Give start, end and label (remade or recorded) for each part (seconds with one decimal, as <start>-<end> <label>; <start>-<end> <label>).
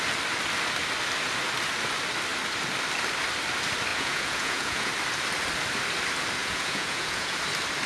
0.0-3.9 recorded; 3.9-4.9 remade; 4.9-6.4 recorded; 6.4-7.4 remade; 7.4-7.9 recorded